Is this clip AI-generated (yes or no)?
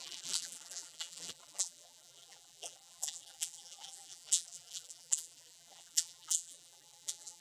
yes